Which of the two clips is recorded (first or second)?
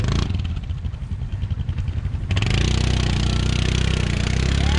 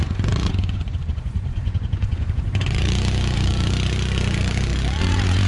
first